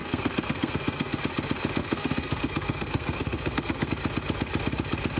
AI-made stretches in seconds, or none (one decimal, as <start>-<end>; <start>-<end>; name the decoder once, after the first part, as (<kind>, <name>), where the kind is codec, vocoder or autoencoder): 0.0-1.2 (codec, SNAC); 1.8-3.9